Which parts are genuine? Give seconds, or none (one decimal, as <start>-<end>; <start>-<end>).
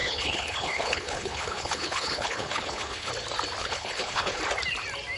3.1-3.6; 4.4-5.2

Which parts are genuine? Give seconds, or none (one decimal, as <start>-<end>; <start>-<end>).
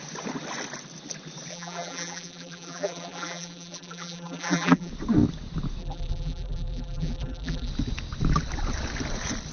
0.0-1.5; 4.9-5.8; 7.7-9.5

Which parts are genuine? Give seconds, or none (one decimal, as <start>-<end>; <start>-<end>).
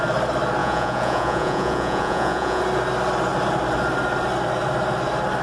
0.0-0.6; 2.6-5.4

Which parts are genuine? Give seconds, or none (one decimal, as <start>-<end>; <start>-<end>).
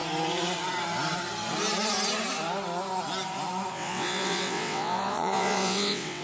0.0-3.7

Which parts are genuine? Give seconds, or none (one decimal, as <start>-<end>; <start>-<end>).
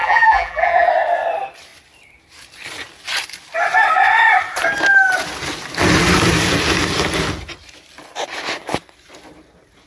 0.9-9.9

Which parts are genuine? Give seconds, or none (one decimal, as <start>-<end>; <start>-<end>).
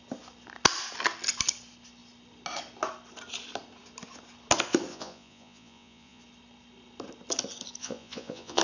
0.0-4.9; 6.2-7.8